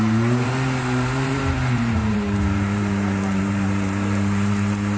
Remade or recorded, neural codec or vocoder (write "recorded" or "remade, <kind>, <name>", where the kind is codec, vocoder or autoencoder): remade, vocoder, BigVGAN v2